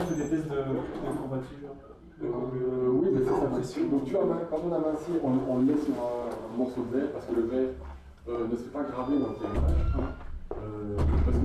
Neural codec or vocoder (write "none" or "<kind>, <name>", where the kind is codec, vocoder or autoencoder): none